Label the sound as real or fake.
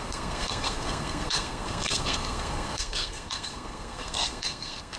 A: fake